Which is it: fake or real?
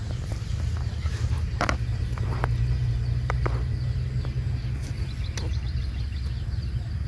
real